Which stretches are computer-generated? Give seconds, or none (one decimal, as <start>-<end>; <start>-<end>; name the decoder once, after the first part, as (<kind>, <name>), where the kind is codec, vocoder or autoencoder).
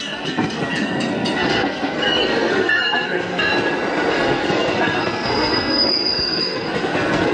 0.0-3.5 (codec, SNAC); 4.1-7.3